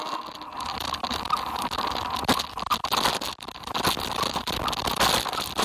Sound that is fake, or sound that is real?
real